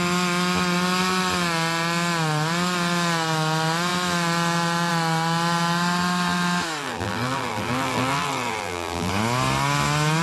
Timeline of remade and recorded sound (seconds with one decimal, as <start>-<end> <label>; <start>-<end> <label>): 0.0-6.8 recorded; 6.8-9.1 remade; 9.1-10.2 recorded